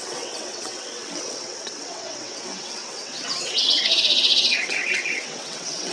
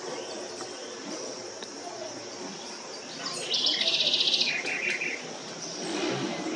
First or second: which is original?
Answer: second